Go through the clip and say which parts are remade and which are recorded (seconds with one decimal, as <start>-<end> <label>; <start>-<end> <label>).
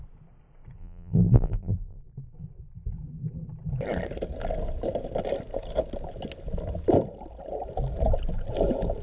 0.0-0.8 recorded; 0.8-2.0 remade; 2.0-9.0 recorded